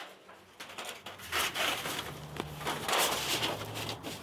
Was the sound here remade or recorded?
recorded